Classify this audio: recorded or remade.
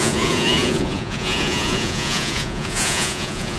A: remade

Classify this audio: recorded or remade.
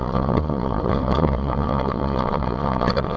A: remade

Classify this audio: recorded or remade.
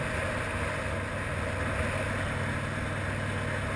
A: recorded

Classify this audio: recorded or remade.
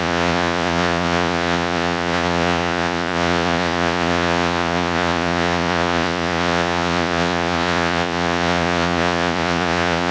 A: remade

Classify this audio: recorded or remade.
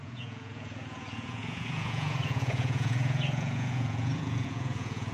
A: remade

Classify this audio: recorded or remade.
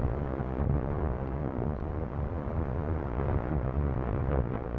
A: remade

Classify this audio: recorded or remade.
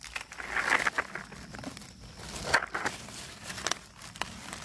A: recorded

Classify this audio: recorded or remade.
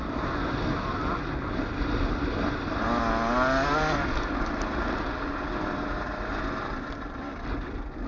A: recorded